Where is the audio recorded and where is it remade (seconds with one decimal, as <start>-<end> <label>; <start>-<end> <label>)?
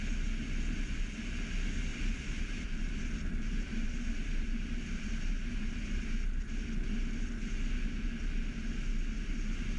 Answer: 0.0-1.9 recorded; 1.9-5.8 remade; 5.8-9.8 recorded